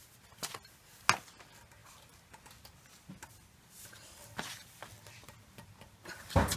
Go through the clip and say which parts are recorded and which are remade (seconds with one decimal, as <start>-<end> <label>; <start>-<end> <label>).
0.0-6.6 recorded